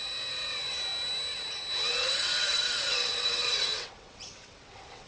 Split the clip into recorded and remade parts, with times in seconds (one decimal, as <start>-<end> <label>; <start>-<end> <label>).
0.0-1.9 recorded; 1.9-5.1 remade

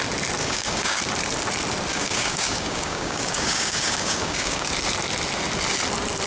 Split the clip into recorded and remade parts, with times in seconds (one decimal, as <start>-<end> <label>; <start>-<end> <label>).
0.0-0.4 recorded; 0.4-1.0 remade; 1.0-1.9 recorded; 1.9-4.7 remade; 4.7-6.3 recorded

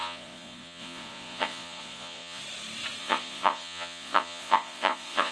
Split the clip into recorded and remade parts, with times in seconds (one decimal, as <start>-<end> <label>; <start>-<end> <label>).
0.0-2.4 remade; 2.4-3.0 recorded; 3.0-5.3 remade

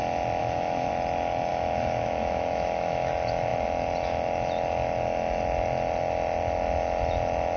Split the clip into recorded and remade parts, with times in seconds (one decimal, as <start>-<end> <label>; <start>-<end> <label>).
0.0-0.4 recorded; 0.4-0.9 remade; 0.9-1.5 recorded; 1.5-3.1 remade; 3.1-7.6 recorded